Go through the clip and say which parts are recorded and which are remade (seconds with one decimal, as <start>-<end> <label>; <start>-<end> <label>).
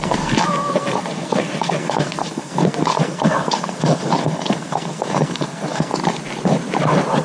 0.0-5.9 remade; 5.9-7.2 recorded